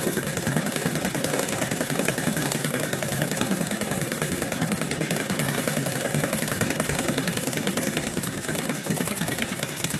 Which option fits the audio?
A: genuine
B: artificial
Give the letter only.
B